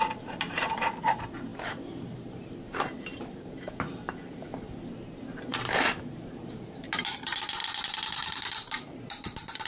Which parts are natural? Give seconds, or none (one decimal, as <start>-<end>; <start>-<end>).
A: 4.5-5.2